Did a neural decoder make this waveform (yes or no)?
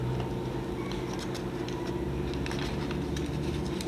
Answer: no